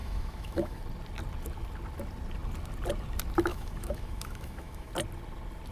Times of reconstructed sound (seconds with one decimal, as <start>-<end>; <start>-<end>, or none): 0.0-0.8; 3.5-4.9